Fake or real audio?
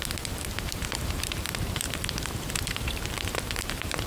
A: fake